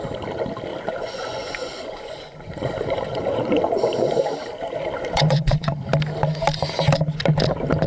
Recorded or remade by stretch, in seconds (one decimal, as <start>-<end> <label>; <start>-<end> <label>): 0.0-0.7 recorded; 0.7-4.2 remade; 4.2-5.0 recorded; 5.0-5.7 remade; 5.7-7.9 recorded